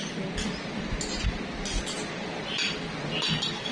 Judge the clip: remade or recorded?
recorded